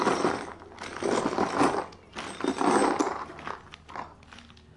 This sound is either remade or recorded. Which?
recorded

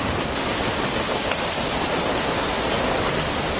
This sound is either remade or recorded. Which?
recorded